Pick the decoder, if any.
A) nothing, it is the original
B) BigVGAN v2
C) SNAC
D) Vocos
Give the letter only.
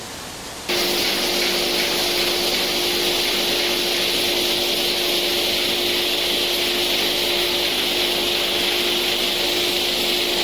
A